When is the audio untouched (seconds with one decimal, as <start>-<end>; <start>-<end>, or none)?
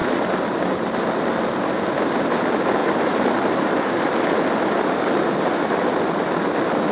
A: 0.0-2.8; 6.3-6.9